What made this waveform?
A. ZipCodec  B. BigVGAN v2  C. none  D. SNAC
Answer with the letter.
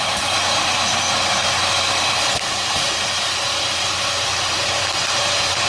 C